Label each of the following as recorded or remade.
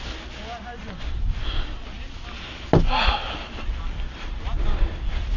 recorded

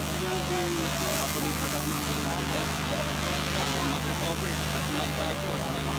remade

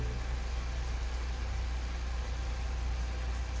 recorded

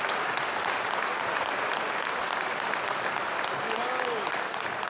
recorded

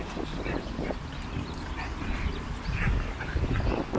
recorded